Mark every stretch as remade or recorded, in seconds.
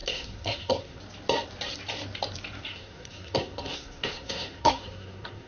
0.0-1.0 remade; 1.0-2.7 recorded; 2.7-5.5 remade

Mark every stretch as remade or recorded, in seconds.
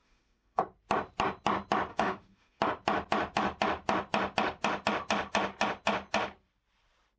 0.0-0.6 remade; 0.6-1.9 recorded; 1.9-2.6 remade; 2.6-7.2 recorded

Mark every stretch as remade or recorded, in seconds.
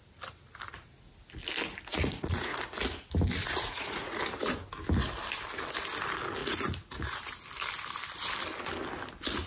0.0-1.9 recorded; 1.9-2.6 remade; 2.6-3.4 recorded; 3.4-4.2 remade; 4.2-6.4 recorded; 6.4-7.2 remade; 7.2-9.5 recorded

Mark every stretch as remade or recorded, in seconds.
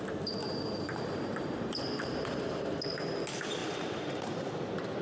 0.0-0.4 recorded; 0.4-2.6 remade; 2.6-3.6 recorded; 3.6-4.5 remade; 4.5-5.0 recorded